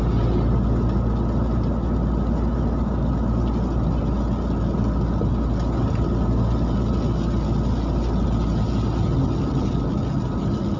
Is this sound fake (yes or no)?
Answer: no